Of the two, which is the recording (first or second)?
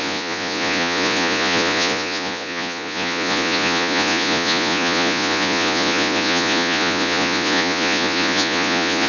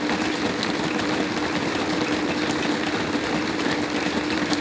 second